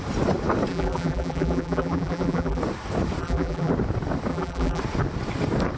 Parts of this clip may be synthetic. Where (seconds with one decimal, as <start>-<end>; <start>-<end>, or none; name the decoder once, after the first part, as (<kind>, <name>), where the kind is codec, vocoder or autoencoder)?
0.7-2.6 (vocoder, BigVGAN v2); 3.2-3.7; 4.3-4.8